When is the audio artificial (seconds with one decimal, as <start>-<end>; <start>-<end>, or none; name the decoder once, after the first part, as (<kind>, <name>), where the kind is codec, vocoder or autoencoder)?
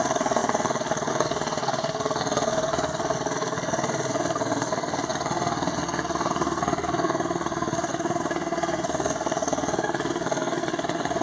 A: 0.0-11.2 (codec, SNAC)